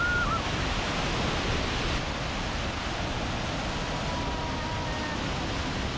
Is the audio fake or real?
real